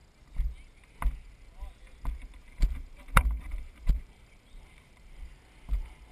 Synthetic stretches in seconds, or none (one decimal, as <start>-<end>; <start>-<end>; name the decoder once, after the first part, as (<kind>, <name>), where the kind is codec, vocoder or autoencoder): 2.4-5.2 (vocoder, BigVGAN v2)